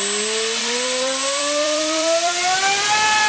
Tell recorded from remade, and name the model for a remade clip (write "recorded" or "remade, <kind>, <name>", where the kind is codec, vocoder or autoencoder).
remade, vocoder, BigVGAN v2